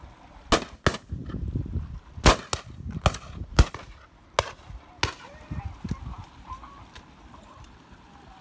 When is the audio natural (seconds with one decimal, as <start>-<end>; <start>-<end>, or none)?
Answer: 0.0-1.2; 2.0-8.4